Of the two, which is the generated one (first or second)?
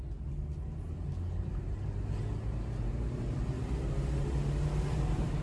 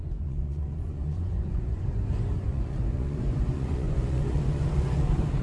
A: second